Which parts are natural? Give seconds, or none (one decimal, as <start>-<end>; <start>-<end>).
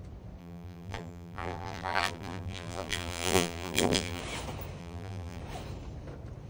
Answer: 0.0-0.4; 4.2-4.8; 5.4-6.5